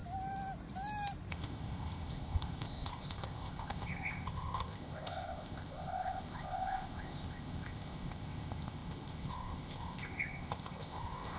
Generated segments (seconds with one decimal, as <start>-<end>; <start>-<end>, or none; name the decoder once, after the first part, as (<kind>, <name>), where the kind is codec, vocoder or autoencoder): 1.3-11.4 (codec, ZipCodec)